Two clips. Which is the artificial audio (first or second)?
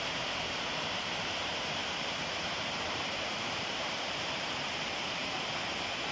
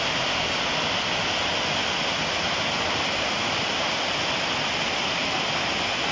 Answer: first